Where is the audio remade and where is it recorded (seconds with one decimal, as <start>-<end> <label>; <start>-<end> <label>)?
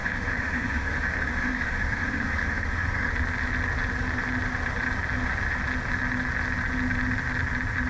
0.0-3.1 remade; 3.1-7.9 recorded